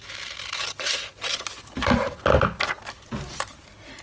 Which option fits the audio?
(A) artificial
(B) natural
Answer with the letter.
B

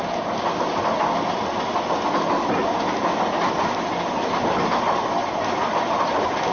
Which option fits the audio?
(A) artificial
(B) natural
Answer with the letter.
B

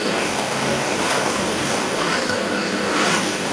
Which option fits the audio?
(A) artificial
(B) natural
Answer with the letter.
A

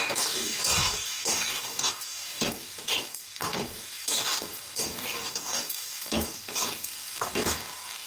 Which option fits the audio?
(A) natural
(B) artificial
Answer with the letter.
B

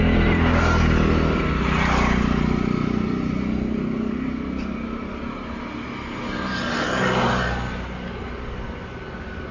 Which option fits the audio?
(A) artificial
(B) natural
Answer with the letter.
B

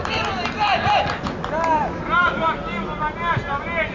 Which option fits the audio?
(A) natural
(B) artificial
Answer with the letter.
A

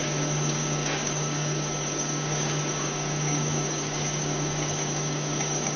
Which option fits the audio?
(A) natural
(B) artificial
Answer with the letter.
B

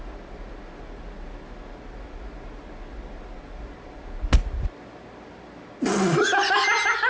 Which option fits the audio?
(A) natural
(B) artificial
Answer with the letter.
A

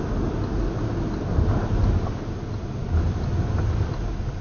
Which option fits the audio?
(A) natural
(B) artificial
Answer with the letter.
A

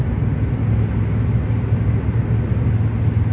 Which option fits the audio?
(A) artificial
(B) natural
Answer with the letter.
B